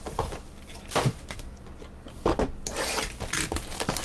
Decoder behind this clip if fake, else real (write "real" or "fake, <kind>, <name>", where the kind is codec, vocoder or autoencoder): real